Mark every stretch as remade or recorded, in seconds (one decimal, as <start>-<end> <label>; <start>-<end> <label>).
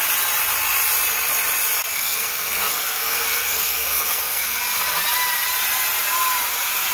0.0-1.9 recorded; 1.9-4.6 remade; 4.6-6.9 recorded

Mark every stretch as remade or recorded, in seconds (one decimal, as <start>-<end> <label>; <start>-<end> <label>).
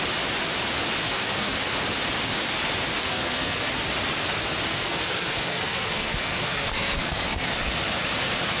0.0-1.0 recorded; 1.0-1.5 remade; 1.5-3.0 recorded; 3.0-3.7 remade; 3.7-4.7 recorded; 4.7-7.5 remade; 7.5-8.6 recorded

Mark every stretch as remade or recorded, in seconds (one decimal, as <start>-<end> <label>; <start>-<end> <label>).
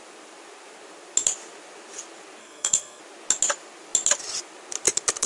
0.0-2.4 recorded; 2.4-3.0 remade; 3.0-5.3 recorded